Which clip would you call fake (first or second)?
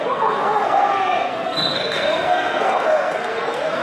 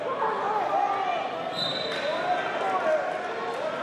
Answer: first